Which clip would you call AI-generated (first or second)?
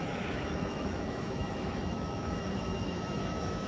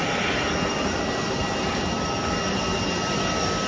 first